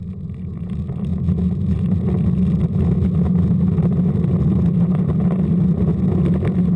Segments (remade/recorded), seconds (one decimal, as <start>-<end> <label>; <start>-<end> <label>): 0.0-6.8 recorded